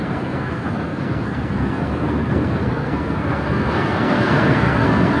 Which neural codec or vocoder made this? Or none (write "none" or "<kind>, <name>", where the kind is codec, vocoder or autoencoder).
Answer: codec, SNAC